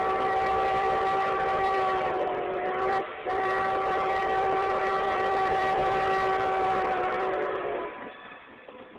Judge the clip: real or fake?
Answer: fake